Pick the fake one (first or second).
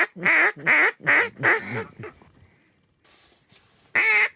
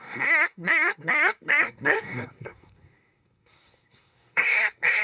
second